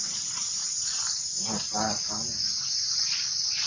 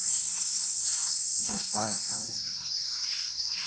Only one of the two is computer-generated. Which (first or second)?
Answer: second